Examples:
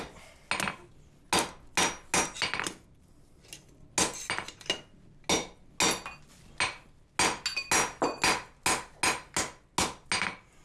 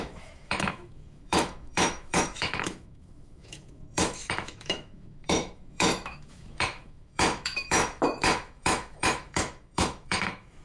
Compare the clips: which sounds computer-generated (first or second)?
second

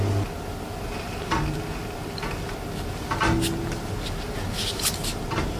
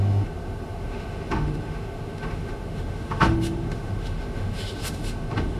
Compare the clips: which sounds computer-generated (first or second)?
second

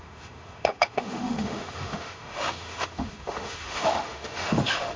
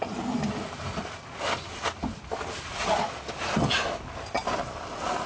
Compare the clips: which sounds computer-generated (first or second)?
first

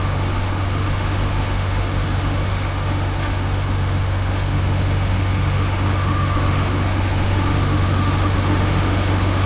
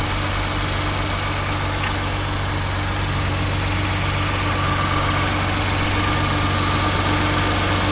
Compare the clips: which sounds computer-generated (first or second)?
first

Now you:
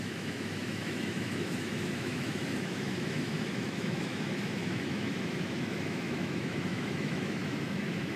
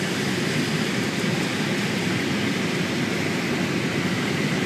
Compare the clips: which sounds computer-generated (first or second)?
first